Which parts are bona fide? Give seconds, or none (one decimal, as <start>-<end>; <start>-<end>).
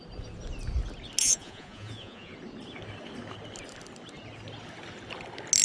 0.0-1.2; 2.3-5.6